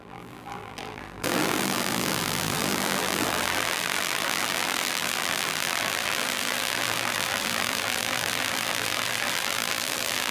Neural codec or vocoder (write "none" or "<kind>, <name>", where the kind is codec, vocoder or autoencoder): vocoder, BigVGAN v2